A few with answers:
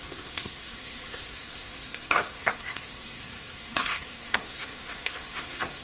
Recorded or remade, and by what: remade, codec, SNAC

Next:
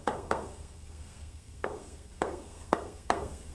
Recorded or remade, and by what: remade, codec, SNAC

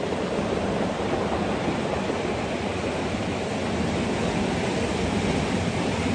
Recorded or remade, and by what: recorded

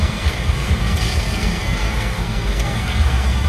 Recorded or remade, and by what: remade, codec, SNAC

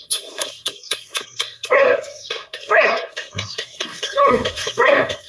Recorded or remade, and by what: remade, codec, SNAC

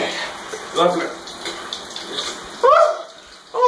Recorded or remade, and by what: recorded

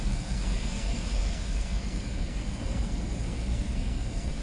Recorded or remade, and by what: remade, codec, SNAC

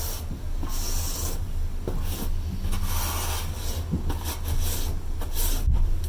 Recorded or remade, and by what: recorded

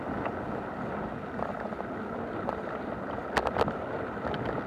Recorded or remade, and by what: recorded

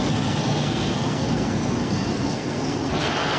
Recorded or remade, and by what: remade, codec, SNAC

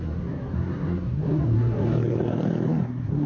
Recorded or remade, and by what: remade, codec, SNAC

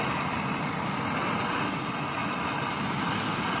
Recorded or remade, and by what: recorded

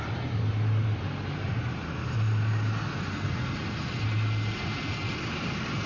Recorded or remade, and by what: recorded